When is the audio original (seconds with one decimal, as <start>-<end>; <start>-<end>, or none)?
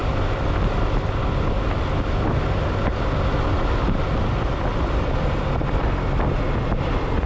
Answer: 0.0-7.3